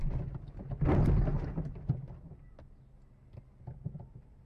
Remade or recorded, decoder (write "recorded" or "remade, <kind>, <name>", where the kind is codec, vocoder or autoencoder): recorded